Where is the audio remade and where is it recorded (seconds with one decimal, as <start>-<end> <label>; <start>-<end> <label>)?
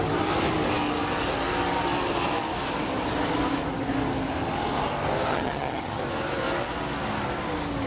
0.0-5.3 recorded; 5.3-6.0 remade; 6.0-7.9 recorded